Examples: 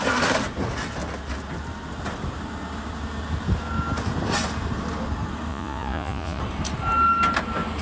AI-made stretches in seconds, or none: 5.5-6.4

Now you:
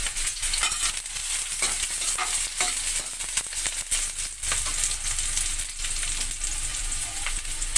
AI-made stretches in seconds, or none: 0.0-0.5; 6.7-7.8